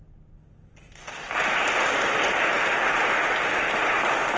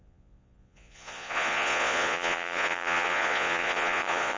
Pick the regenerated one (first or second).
second